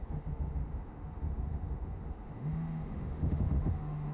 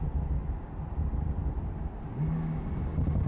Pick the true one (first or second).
second